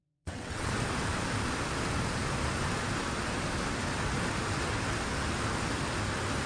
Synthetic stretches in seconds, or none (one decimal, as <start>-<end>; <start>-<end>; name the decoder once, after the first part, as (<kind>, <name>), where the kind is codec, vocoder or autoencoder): 0.0-0.7 (vocoder, WaveNeXt)